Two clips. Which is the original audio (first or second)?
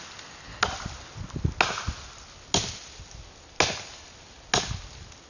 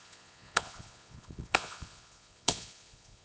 first